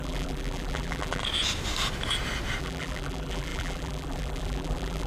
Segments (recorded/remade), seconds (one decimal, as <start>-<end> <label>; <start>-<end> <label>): 0.0-1.2 remade; 1.2-2.6 recorded; 2.6-5.1 remade